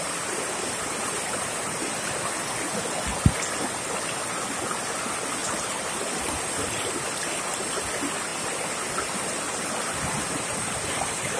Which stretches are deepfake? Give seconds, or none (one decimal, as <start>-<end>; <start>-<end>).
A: 5.4-6.4; 8.3-10.1